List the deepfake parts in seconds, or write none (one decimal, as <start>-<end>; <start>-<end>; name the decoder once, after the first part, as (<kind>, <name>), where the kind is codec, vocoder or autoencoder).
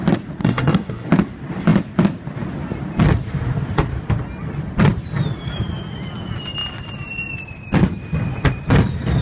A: 0.4-1.1 (codec, SNAC)